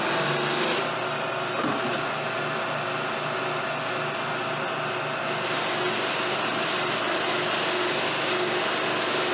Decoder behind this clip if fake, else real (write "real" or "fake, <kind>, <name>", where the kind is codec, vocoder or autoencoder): real